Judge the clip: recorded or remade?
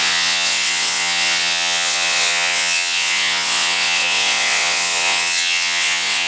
remade